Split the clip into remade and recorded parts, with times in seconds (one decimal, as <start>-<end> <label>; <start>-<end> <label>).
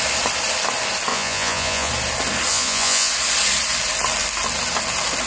0.0-1.1 recorded; 1.1-1.9 remade; 1.9-2.5 recorded; 2.5-3.1 remade; 3.1-5.3 recorded